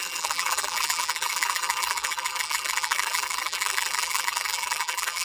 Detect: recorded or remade remade